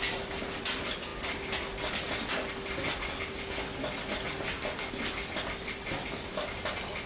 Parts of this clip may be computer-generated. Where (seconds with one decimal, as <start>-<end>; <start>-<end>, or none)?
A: none